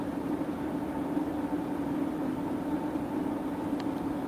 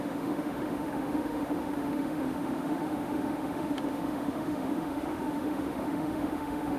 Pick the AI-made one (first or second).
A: second